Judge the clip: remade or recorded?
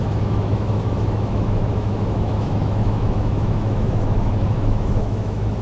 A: remade